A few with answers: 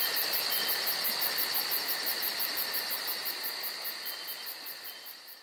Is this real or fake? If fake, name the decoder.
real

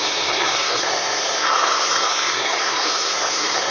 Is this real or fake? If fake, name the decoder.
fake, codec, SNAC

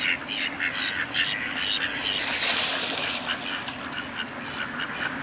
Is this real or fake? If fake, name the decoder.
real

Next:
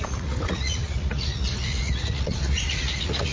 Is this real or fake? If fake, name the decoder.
fake, vocoder, Vocos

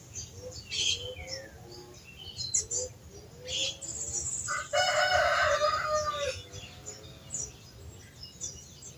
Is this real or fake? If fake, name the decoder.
real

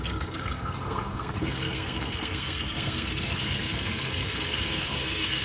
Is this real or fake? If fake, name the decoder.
fake, codec, SNAC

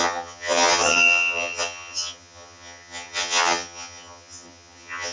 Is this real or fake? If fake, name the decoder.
fake, vocoder, HiFi-GAN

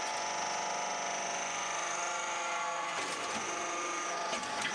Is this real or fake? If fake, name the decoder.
fake, vocoder, Vocos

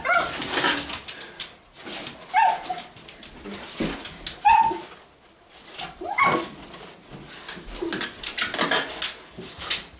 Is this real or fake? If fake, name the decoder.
real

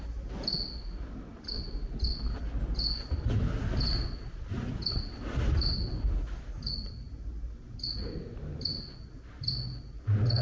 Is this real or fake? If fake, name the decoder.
real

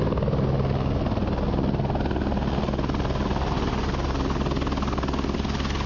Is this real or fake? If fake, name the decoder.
real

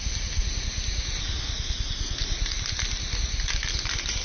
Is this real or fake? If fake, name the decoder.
real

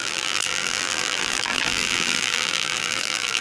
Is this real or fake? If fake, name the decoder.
fake, vocoder, BigVGAN v2